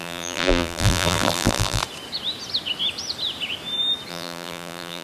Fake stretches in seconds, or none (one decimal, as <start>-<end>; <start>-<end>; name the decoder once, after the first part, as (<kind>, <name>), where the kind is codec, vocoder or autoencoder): 0.0-1.8 (vocoder, BigVGAN v2); 4.1-5.0

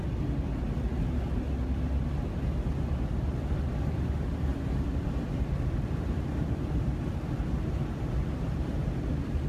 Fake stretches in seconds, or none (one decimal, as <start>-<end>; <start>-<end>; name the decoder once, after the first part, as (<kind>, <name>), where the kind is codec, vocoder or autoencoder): 4.5-9.1 (vocoder, BigVGAN v2)